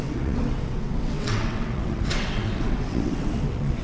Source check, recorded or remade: remade